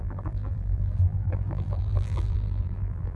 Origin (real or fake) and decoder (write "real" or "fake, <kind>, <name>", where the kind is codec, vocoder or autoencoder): fake, vocoder, BigVGAN v2